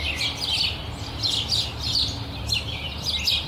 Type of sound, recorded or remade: recorded